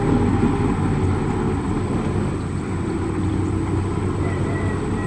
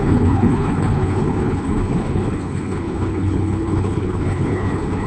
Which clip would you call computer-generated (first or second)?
second